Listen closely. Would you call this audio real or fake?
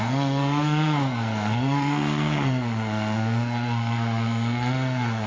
fake